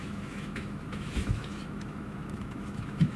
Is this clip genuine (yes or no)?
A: no